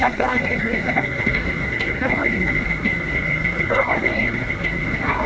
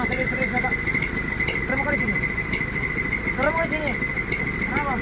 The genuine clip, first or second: second